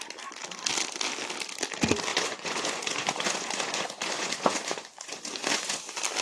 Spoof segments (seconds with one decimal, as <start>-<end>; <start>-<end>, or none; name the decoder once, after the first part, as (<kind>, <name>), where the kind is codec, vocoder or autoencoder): 2.1-5.8 (vocoder, Vocos)